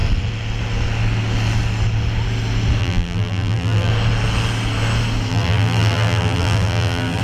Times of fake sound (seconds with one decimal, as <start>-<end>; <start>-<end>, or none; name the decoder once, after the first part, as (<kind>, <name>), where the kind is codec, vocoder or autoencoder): 2.8-3.9 (vocoder, BigVGAN v2); 5.3-7.2